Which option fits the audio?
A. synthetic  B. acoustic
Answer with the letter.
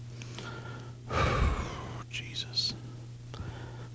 B